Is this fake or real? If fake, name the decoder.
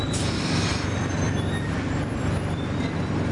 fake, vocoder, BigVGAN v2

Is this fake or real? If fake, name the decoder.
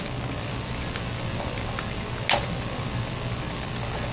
real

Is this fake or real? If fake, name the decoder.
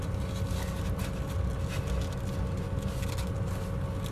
real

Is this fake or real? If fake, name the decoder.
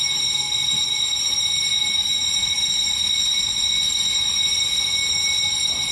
real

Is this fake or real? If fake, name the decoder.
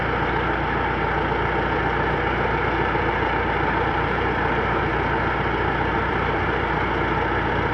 real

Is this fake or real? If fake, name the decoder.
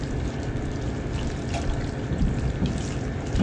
real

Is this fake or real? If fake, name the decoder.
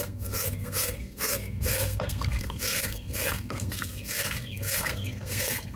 fake, codec, SNAC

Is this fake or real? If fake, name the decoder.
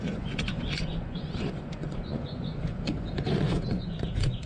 fake, vocoder, Vocos